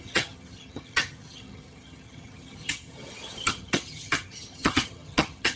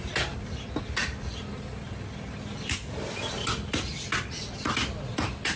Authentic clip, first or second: second